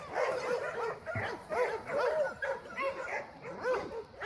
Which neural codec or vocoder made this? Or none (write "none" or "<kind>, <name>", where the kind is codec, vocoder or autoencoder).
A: vocoder, BigVGAN v2